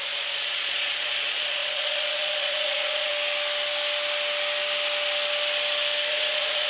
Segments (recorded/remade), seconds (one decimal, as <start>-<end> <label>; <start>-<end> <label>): 0.0-3.1 remade; 3.1-6.1 recorded; 6.1-6.7 remade